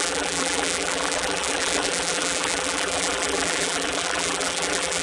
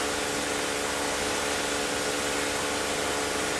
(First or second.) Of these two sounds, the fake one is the first